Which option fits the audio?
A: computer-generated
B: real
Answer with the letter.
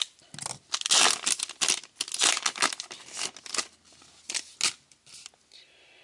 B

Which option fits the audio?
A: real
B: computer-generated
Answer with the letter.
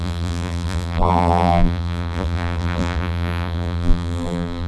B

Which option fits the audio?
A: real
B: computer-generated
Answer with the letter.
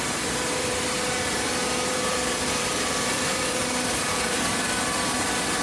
B